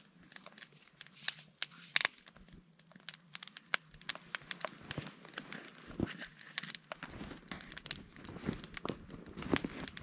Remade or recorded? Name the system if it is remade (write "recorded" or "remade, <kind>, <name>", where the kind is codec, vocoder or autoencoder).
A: recorded